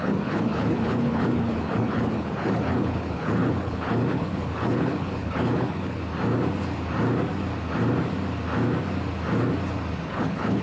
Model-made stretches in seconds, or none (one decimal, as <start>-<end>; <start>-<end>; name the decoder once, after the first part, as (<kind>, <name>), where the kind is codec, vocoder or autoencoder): 0.0-6.0 (codec, HILCodec); 10.1-10.6